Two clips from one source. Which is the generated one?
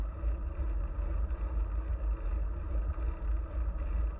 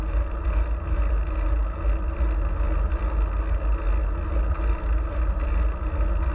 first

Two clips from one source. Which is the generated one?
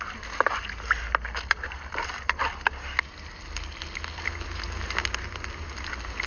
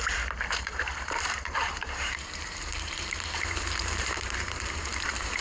second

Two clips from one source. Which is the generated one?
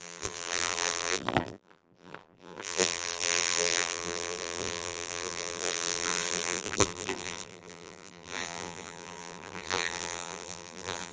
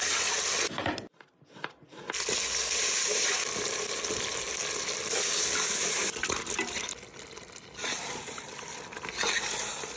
first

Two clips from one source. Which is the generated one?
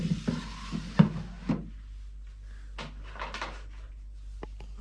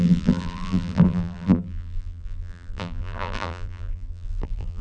second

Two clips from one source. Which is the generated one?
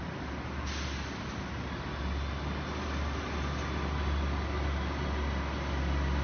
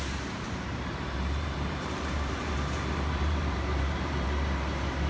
second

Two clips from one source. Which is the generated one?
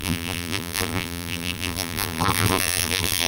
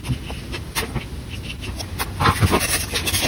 first